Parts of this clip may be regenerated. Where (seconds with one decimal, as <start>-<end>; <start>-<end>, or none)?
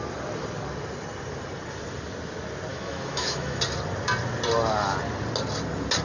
2.7-3.6